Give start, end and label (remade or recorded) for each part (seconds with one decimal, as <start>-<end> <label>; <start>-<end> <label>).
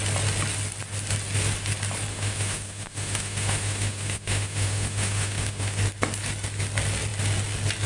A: 0.0-2.1 recorded; 2.1-5.8 remade; 5.8-7.9 recorded